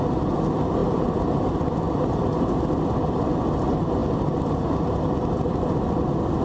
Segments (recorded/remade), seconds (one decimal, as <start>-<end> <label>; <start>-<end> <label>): 0.0-0.8 recorded; 0.8-2.1 remade; 2.1-6.4 recorded